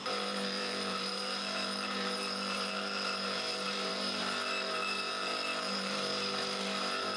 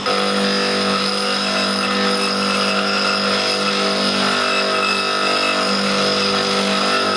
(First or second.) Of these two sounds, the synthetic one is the first